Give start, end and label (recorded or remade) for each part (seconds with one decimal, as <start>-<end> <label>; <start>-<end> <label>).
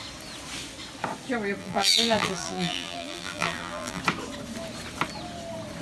0.0-1.6 recorded; 1.6-4.0 remade; 4.0-5.8 recorded